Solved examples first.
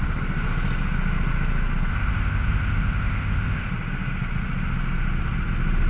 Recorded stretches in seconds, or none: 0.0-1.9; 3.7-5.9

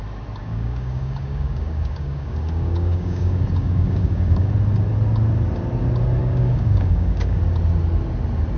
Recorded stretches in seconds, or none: 0.0-0.4; 4.5-6.2; 7.4-8.6